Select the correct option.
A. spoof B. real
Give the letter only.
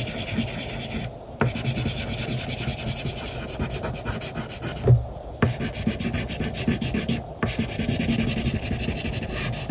B